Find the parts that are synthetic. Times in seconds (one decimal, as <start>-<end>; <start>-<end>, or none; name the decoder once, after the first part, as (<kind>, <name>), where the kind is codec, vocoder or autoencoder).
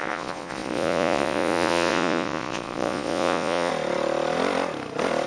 0.0-3.7 (vocoder, Vocos)